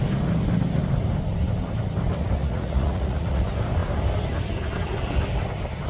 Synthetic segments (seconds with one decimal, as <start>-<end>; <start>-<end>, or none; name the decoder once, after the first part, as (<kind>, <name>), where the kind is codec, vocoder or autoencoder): 2.4-3.4 (vocoder, Vocos)